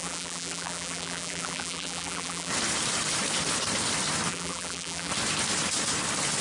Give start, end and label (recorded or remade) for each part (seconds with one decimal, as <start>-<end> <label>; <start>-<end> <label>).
0.0-2.5 remade; 2.5-4.3 recorded; 4.3-5.1 remade; 5.1-6.4 recorded